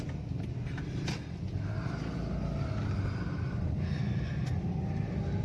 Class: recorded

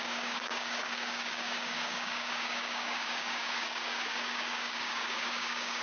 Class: remade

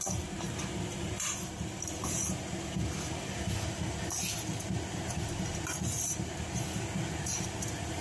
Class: recorded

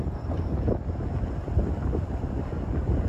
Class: recorded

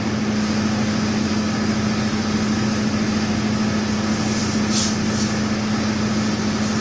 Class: recorded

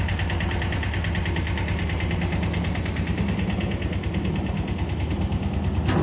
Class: recorded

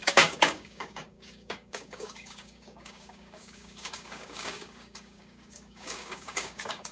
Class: remade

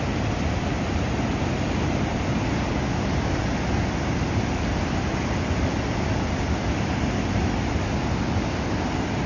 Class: recorded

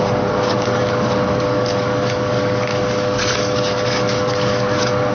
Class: remade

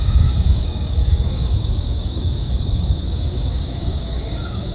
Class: remade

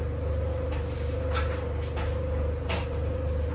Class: recorded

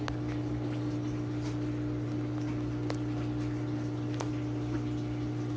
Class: recorded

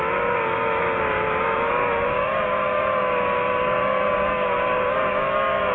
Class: remade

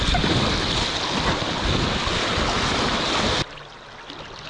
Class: recorded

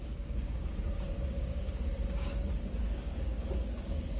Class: remade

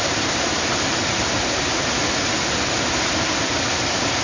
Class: recorded